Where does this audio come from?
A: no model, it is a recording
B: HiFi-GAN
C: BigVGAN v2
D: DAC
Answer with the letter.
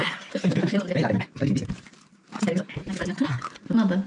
C